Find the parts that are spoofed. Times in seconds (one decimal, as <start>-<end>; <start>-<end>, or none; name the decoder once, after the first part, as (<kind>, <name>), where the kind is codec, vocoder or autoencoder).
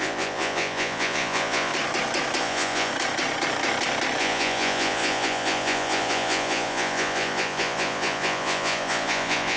0.0-1.7 (vocoder, Vocos); 2.4-2.9; 4.2-9.6